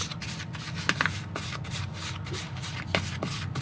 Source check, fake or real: real